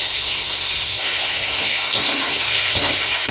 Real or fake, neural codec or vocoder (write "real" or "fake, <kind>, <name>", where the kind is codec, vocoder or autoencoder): fake, codec, SNAC